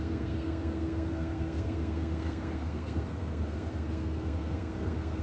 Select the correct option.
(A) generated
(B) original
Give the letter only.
A